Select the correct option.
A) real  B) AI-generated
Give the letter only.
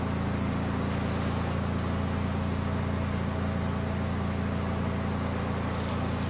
A